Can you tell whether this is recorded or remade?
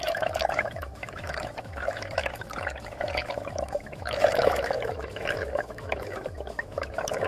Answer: remade